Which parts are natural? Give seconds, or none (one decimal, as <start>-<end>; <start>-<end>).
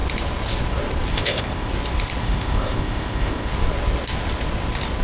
0.0-1.1; 1.7-2.2; 3.5-5.0